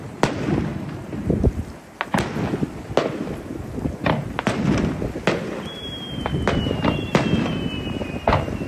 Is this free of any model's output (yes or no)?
yes